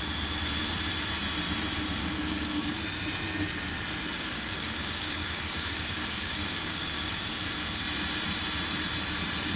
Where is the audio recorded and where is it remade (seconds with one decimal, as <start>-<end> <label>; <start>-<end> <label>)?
0.0-2.0 recorded; 2.0-2.7 remade; 2.7-4.3 recorded; 4.3-7.4 remade; 7.4-9.6 recorded